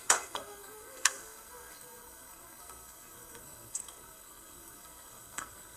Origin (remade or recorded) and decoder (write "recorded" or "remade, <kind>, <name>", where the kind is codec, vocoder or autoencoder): remade, codec, SNAC